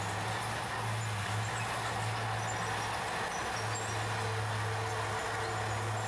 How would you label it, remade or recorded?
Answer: recorded